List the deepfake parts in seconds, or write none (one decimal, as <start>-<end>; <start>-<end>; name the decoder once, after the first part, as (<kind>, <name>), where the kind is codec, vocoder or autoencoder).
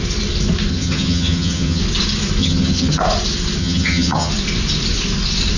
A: 0.7-1.8 (vocoder, HiFi-GAN); 2.4-3.0; 3.6-4.3